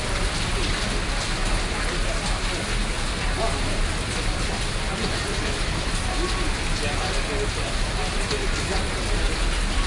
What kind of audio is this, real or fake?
real